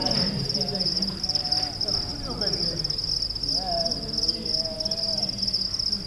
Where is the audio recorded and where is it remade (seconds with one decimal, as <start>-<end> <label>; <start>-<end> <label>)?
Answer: 0.0-1.5 remade; 1.5-6.1 recorded